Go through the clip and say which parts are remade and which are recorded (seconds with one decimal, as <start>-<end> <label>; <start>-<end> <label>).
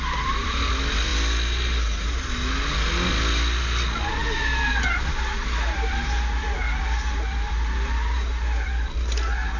0.0-9.6 recorded